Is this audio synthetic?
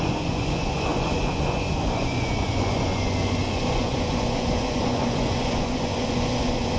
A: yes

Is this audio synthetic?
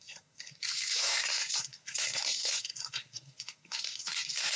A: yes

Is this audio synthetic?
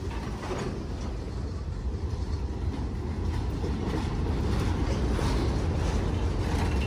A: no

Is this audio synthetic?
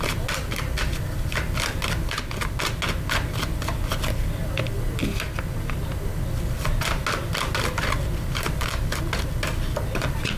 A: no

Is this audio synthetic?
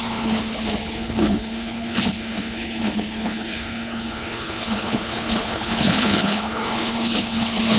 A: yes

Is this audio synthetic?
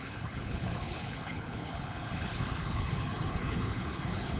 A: yes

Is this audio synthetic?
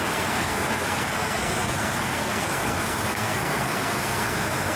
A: yes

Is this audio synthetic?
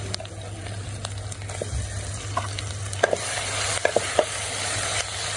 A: no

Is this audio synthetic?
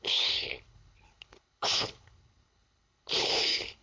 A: yes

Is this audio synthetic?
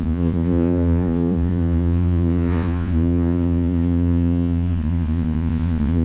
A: yes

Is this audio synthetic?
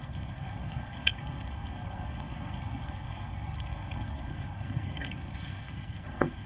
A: yes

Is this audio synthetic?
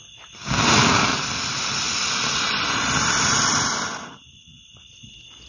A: no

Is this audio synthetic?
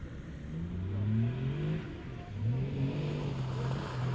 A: no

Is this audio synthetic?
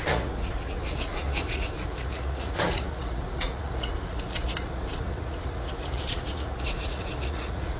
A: yes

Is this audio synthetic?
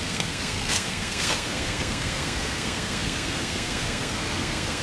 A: yes